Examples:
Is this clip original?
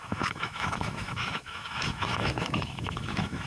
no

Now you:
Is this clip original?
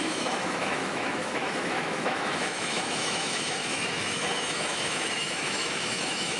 no